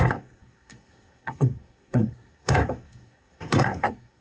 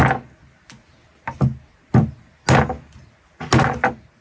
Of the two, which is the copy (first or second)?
first